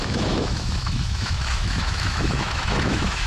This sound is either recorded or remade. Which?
remade